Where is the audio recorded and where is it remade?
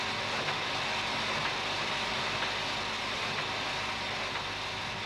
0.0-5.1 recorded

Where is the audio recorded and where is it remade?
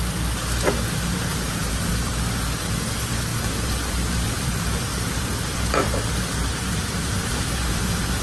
0.0-1.3 recorded; 1.3-1.9 remade; 1.9-3.3 recorded; 3.3-8.2 remade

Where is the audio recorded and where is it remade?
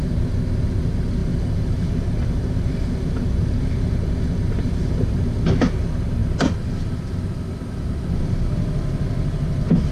0.0-1.2 recorded; 1.2-5.2 remade; 5.2-9.9 recorded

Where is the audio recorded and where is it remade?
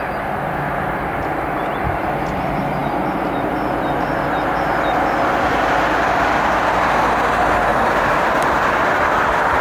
0.0-7.7 recorded; 7.7-8.6 remade; 8.6-9.6 recorded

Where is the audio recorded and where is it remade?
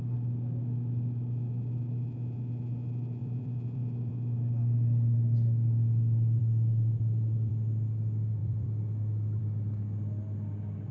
0.0-3.2 recorded; 3.2-4.1 remade; 4.1-6.4 recorded; 6.4-7.5 remade; 7.5-8.4 recorded; 8.4-9.4 remade; 9.4-10.9 recorded